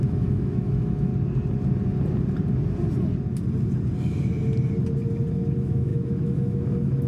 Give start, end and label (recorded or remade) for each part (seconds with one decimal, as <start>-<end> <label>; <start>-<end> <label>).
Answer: 0.0-1.1 remade; 1.1-5.3 recorded; 5.3-7.1 remade